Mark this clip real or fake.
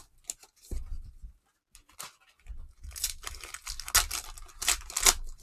real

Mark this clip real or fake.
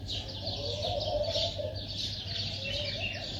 real